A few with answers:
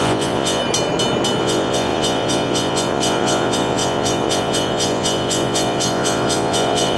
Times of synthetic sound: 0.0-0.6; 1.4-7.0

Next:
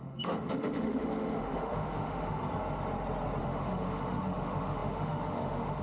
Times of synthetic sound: 0.0-2.4; 3.4-5.8

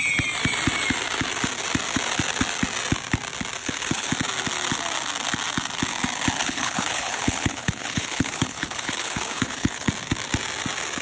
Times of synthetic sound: 3.6-4.1; 6.4-9.9